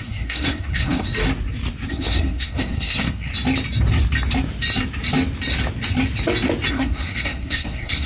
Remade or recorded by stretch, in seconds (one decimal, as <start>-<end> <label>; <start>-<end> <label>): 0.0-1.1 remade; 1.1-1.9 recorded; 1.9-3.3 remade; 3.3-6.7 recorded; 6.7-8.1 remade